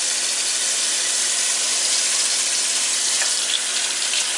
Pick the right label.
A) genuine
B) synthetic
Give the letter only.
B